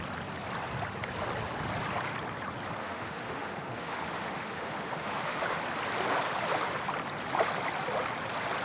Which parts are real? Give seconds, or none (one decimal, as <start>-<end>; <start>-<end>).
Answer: 0.0-2.8; 5.6-8.6